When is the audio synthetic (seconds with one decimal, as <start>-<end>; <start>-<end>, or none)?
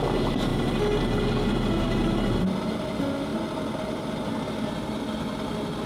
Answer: none